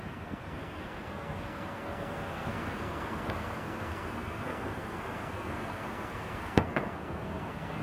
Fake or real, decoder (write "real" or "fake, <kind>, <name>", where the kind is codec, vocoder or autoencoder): fake, codec, SNAC